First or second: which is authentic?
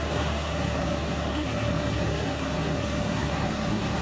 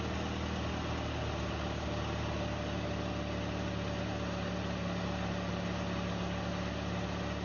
second